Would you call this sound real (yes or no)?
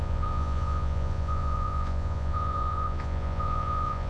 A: no